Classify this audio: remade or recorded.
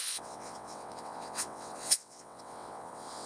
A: remade